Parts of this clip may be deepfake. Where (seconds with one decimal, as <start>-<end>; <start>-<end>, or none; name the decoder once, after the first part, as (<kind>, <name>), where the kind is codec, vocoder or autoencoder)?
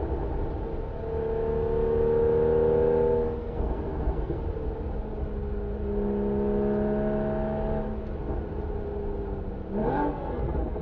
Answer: 3.4-4.4 (codec, SNAC); 9.8-10.8